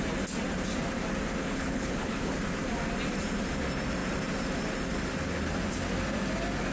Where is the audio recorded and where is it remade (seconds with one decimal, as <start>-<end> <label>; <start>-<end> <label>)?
0.0-1.4 recorded; 1.4-2.3 remade; 2.3-6.7 recorded